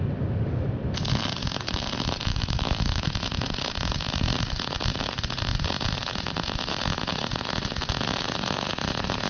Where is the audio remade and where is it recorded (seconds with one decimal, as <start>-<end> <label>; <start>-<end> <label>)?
0.0-2.3 recorded; 2.3-3.0 remade; 3.0-9.3 recorded